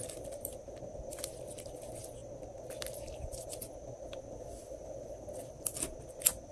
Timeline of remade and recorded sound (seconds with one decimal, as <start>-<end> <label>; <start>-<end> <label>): 0.0-6.5 recorded